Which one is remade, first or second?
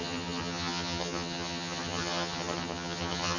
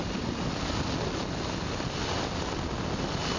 first